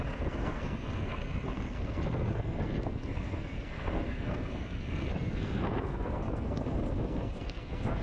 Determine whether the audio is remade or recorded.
remade